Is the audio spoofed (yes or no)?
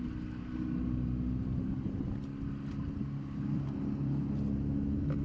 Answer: no